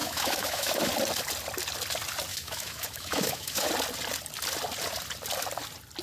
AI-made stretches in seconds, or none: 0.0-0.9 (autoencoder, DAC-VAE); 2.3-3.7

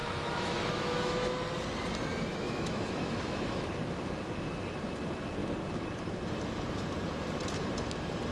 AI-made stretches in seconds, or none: 0.0-1.3 (autoencoder, DAC-VAE); 2.3-3.7